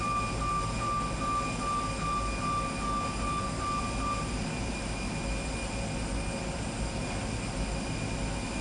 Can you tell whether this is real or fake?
real